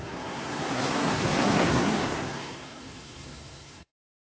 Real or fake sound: fake